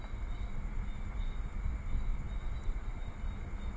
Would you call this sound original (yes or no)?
yes